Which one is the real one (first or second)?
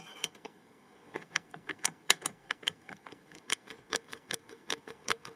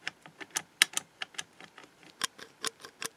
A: second